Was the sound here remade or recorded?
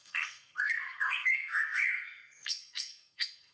remade